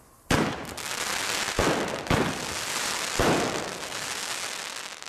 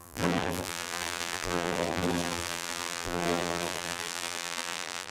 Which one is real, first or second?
first